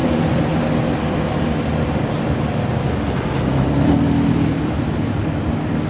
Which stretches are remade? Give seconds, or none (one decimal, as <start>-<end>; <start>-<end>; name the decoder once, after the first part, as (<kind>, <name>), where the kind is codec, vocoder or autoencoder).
none